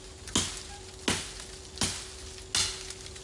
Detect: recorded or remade recorded